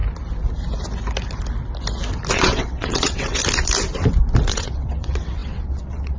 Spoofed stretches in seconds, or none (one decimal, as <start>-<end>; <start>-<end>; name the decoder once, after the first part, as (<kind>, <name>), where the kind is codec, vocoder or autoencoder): 2.3-3.4 (vocoder, WaveNeXt); 4.5-6.2